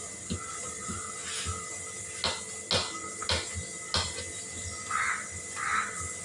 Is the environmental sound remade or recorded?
recorded